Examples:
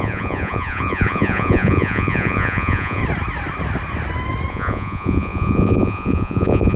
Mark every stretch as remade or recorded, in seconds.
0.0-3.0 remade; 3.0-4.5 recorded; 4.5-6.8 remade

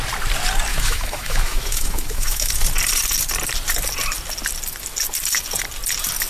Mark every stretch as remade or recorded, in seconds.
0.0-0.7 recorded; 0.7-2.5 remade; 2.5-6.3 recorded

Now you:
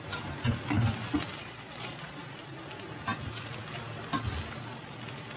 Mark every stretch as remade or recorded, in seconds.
0.0-1.4 recorded; 1.4-2.2 remade; 2.2-5.4 recorded